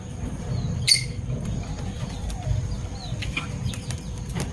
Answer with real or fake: real